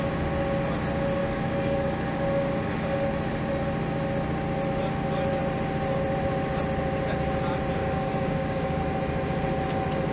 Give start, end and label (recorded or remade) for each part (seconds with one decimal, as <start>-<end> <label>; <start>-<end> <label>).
0.0-1.2 recorded; 1.2-3.1 remade; 3.1-7.8 recorded; 7.8-8.8 remade; 8.8-10.1 recorded